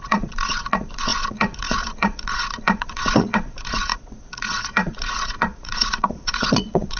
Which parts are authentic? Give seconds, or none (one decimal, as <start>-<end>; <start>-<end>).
none